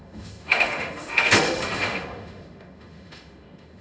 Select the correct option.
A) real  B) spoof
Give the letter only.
B